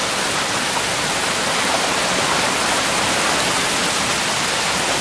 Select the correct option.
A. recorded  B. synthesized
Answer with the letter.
A